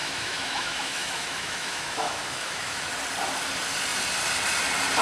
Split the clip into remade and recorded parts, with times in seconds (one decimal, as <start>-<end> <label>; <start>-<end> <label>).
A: 0.0-2.9 remade; 2.9-5.0 recorded